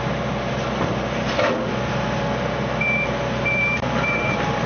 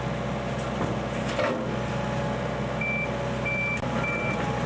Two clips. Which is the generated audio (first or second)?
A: first